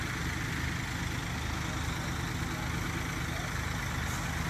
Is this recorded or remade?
recorded